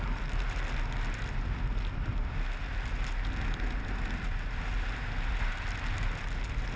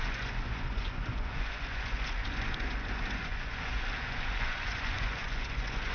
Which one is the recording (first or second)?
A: first